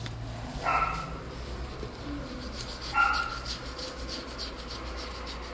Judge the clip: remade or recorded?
recorded